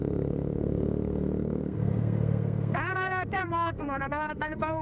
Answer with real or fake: fake